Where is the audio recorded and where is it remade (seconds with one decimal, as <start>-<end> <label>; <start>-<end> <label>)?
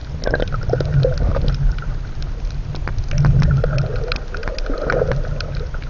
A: 0.0-5.9 recorded